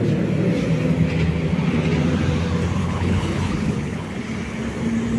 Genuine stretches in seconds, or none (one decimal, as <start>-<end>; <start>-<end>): 0.0-2.8; 4.2-5.2